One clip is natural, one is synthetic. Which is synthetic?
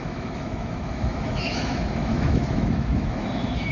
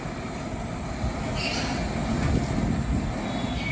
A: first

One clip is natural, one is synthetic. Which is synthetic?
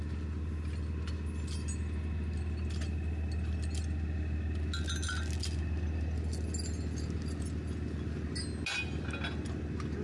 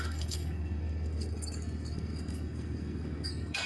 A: second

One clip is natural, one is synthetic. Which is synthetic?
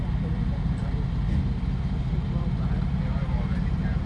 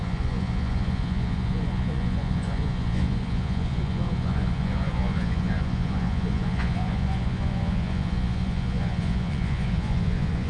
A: second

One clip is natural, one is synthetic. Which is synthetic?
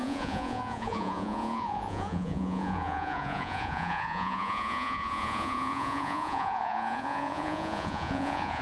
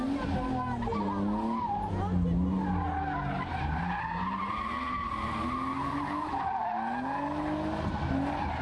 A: first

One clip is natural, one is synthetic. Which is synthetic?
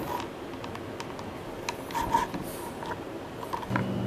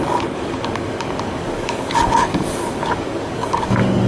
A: second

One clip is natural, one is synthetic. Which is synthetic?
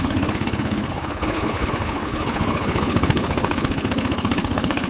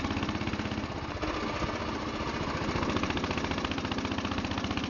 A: first